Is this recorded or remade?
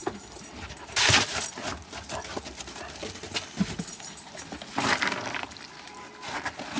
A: recorded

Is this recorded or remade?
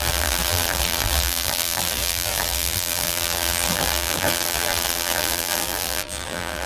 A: remade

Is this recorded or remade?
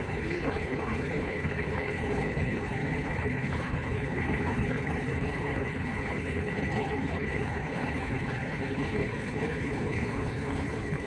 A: remade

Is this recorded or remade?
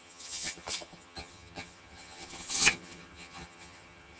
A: remade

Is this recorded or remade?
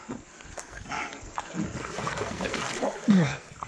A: remade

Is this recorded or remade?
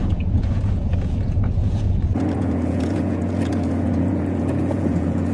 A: remade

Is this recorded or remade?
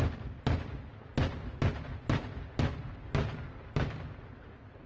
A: recorded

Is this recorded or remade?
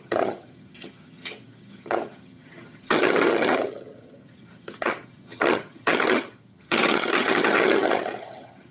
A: remade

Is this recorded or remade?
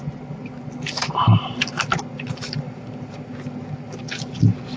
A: recorded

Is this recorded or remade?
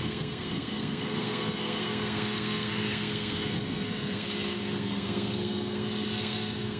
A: remade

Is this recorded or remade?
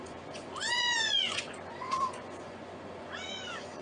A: remade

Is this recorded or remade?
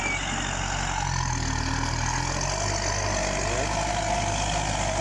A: recorded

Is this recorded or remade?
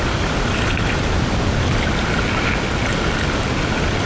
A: recorded